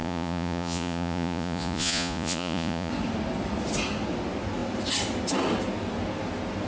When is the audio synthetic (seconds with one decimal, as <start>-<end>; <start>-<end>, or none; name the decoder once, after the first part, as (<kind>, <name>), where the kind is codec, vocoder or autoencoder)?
0.0-2.9 (vocoder, Vocos)